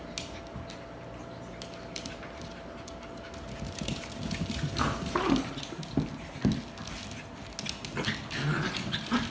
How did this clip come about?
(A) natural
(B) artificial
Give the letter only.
A